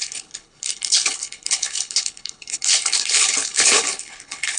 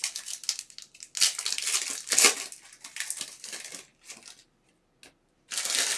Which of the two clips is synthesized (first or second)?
first